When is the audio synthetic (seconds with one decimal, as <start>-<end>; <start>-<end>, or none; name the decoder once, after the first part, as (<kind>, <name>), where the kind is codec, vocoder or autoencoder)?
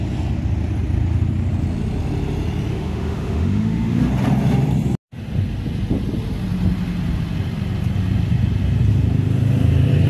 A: 2.7-4.1 (autoencoder, DAC-VAE)